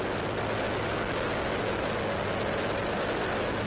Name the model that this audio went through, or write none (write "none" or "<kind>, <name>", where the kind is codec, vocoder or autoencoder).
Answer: none